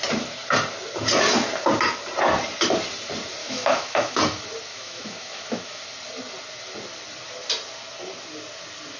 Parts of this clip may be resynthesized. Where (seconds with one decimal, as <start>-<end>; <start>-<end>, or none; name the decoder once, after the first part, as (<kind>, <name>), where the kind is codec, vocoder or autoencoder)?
3.4-4.2 (autoencoder, DAC-VAE); 4.7-5.8